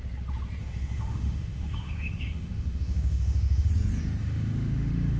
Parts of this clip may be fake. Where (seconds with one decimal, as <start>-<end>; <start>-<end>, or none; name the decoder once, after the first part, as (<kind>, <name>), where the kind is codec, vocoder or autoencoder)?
0.6-3.7 (autoencoder, DAC-VAE); 4.2-5.2